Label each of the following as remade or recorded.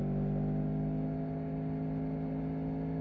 recorded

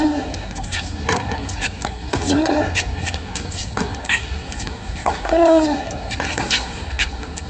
remade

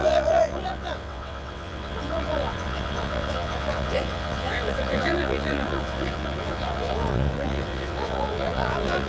remade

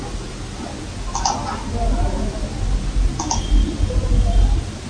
recorded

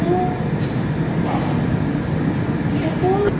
recorded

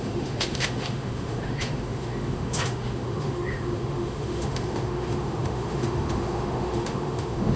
remade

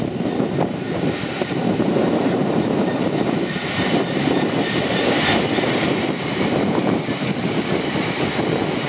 remade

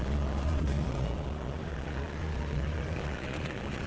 remade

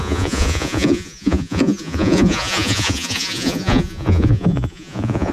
remade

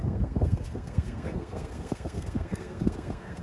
remade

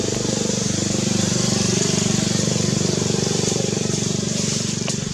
remade